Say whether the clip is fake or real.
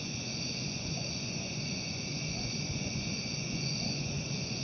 fake